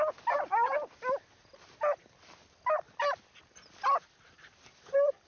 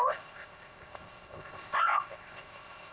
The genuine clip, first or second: first